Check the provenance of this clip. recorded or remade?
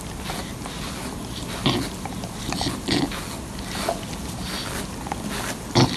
recorded